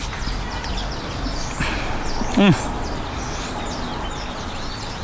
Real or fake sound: real